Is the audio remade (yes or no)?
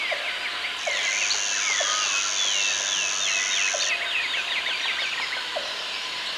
no